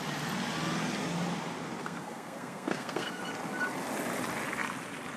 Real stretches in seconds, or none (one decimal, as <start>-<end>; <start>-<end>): 0.0-1.8; 3.2-5.2

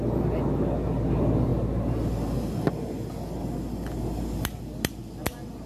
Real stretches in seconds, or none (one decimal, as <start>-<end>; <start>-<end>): 0.0-5.7

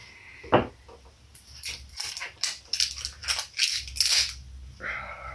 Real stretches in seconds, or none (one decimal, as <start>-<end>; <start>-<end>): 0.0-1.3; 2.2-5.3

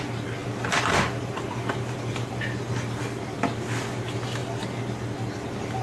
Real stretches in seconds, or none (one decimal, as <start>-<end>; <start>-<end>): 0.0-0.4; 3.9-4.4; 5.0-5.8

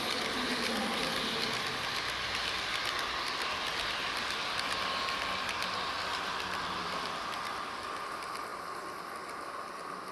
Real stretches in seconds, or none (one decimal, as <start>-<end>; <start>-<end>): 0.0-10.1

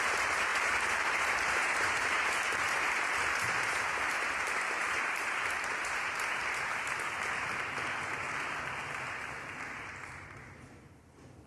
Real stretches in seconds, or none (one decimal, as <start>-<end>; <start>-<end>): 6.4-10.1

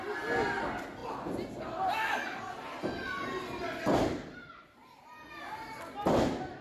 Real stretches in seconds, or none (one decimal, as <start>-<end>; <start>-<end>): 0.0-6.6